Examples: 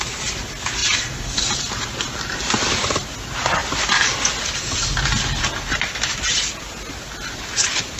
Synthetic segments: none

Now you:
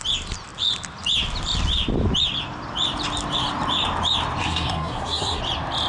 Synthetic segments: 4.4-5.4 (codec, SNAC)

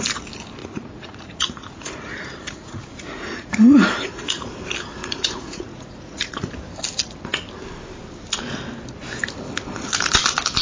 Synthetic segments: 0.6-4.5 (vocoder, Vocos); 5.0-6.5